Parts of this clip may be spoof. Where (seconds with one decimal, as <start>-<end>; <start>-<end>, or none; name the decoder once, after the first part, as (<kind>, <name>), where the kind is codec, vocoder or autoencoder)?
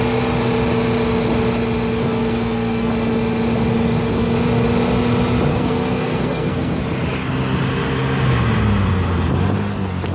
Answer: 2.0-2.9 (codec, SNAC); 5.5-6.8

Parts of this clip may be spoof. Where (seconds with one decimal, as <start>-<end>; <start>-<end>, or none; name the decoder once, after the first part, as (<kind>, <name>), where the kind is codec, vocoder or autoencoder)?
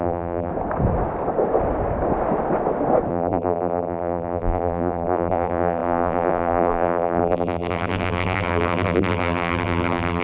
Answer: 0.0-0.5 (vocoder, BigVGAN v2); 3.1-10.2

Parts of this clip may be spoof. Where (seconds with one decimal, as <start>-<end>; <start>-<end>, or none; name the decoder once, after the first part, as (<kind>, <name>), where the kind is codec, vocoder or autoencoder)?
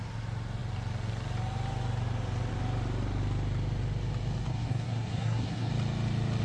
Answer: 4.5-5.7 (codec, SNAC)